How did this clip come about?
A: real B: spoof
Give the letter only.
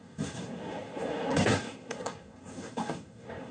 B